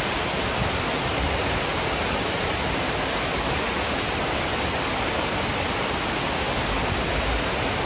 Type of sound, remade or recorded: recorded